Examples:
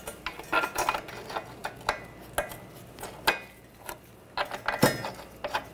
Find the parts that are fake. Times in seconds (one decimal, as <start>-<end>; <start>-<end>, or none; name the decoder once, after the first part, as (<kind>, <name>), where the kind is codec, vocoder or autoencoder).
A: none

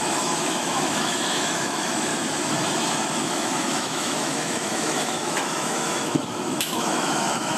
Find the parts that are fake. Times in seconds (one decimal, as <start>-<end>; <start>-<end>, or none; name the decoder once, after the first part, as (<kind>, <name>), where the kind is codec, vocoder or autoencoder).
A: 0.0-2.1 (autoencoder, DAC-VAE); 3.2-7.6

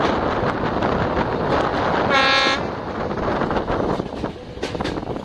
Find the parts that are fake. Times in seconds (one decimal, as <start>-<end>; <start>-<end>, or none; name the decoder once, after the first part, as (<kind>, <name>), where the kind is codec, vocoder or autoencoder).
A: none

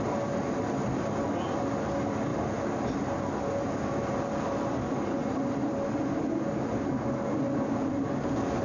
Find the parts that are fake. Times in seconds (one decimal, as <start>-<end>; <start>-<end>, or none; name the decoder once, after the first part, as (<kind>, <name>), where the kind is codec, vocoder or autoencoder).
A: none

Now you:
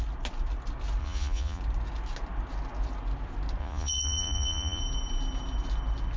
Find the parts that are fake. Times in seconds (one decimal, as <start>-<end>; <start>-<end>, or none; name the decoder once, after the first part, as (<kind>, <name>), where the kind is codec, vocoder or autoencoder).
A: 1.0-1.6 (vocoder, Vocos); 3.6-4.8

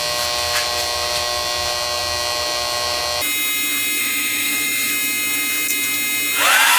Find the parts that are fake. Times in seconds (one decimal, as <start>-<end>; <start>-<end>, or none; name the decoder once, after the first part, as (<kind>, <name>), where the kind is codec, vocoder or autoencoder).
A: 4.0-4.9 (autoencoder, DAC-VAE)